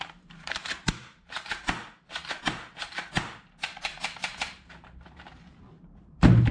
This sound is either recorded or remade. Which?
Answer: remade